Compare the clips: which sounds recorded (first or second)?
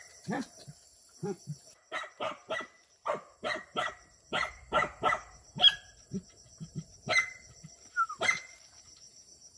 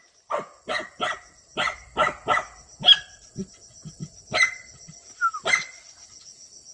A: second